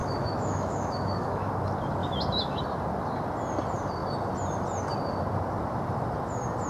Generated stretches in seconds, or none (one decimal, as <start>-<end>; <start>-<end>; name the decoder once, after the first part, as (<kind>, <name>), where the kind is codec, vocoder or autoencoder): 0.0-1.5 (autoencoder, DAC-VAE); 2.0-2.6